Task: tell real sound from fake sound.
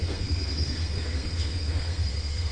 fake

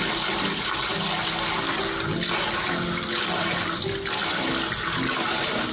real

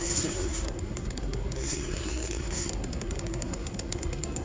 fake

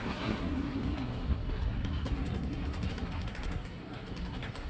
fake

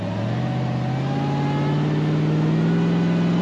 real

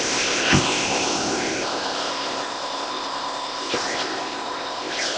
fake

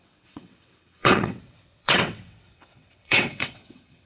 fake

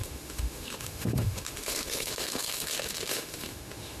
fake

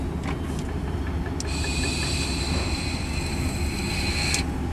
real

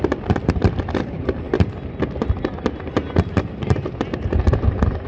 real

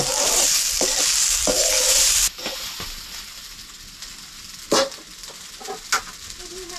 real